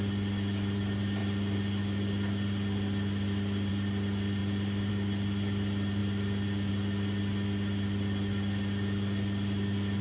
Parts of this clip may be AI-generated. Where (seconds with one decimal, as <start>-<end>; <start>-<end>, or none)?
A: none